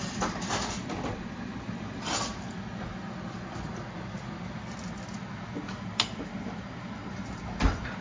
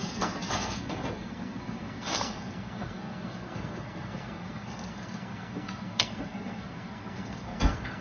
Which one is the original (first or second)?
first